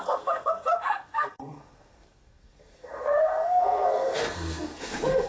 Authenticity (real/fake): fake